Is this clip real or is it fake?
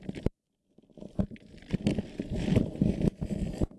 real